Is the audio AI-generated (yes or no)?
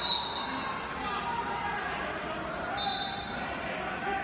no